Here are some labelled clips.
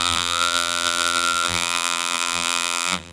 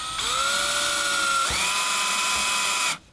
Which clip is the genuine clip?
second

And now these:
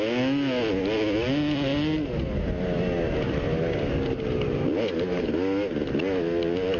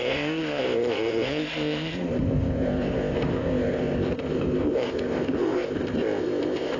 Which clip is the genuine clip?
first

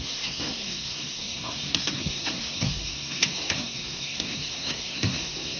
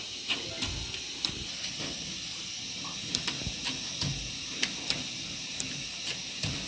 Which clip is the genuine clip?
second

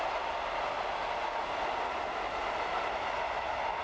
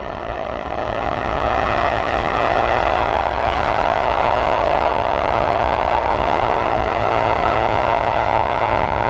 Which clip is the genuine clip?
first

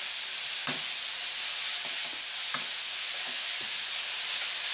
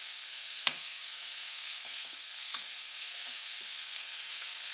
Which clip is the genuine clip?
first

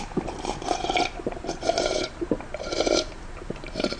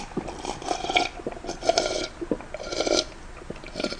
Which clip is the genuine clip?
second